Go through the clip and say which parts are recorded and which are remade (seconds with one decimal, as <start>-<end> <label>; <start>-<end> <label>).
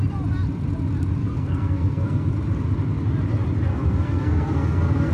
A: 0.0-1.2 recorded; 1.2-2.3 remade; 2.3-3.7 recorded; 3.7-5.1 remade